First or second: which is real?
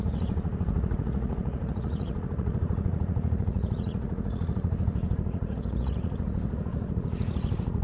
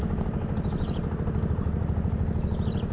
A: second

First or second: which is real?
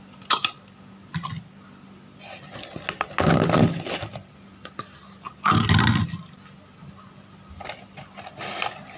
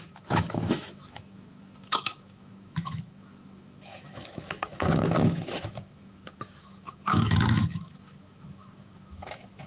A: first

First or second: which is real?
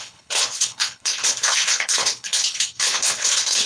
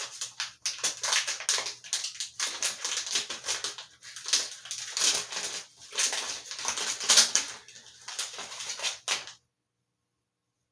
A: second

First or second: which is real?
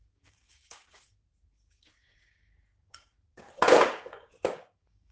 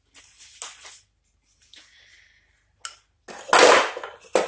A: second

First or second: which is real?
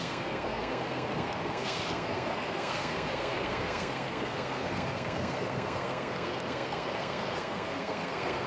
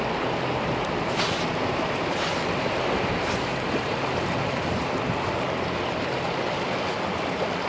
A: second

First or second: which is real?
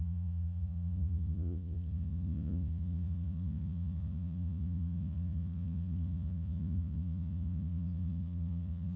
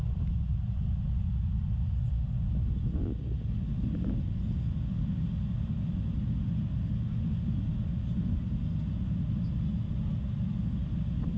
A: second